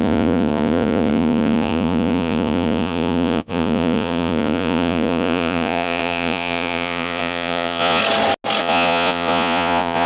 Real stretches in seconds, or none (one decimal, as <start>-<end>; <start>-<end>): 8.0-8.6